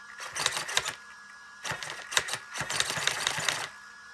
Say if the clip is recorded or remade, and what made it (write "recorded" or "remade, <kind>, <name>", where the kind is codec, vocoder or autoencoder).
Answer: recorded